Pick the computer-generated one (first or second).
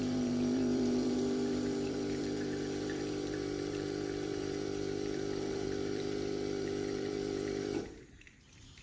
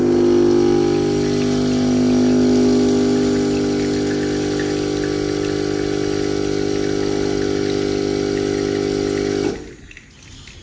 first